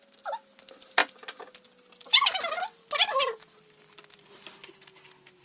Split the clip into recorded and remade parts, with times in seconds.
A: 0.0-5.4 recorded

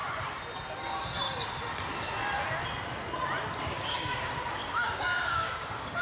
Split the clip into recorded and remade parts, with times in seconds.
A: 0.0-3.6 recorded; 3.6-6.0 remade

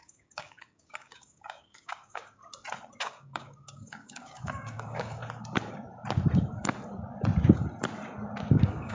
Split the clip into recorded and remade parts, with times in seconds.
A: 0.0-2.4 remade; 2.4-3.0 recorded; 3.0-5.2 remade; 5.2-8.5 recorded; 8.5-8.9 remade

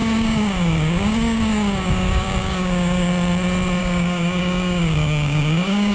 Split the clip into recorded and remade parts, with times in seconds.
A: 0.0-3.1 remade; 3.1-3.8 recorded; 3.8-5.9 remade

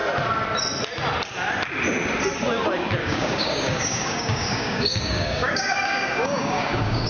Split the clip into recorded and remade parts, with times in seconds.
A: 0.0-3.0 recorded; 3.0-7.1 remade

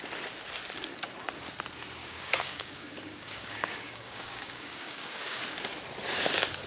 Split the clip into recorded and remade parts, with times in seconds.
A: 0.0-2.0 recorded; 2.0-5.4 remade; 5.4-6.7 recorded

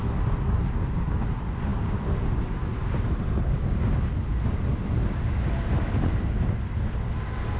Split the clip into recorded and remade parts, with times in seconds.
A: 0.0-7.6 recorded